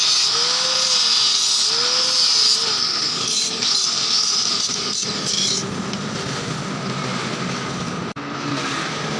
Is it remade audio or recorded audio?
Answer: recorded